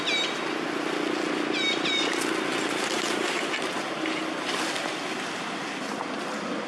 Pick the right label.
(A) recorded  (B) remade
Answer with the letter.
A